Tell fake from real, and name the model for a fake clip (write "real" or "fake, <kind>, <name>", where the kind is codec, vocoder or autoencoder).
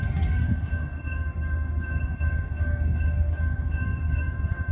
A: fake, autoencoder, DAC-VAE